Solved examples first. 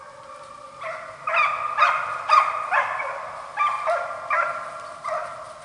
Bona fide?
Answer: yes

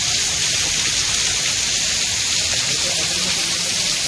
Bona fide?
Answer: yes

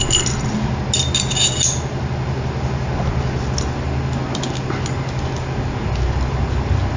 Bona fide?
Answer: yes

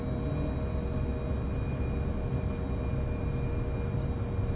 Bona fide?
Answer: yes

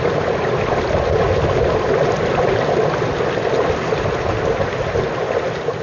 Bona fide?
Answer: yes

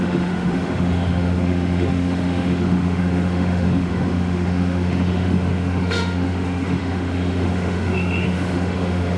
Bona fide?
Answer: no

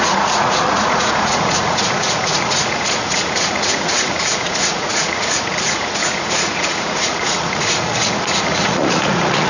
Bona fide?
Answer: no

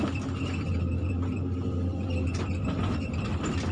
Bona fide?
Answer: no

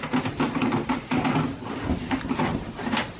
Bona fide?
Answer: yes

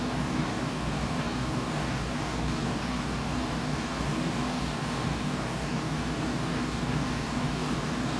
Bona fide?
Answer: no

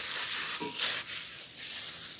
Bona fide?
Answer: yes